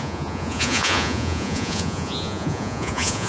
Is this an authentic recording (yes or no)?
no